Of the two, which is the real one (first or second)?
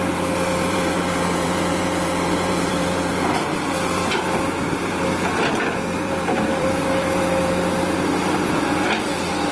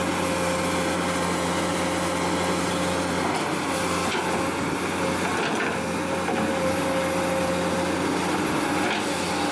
second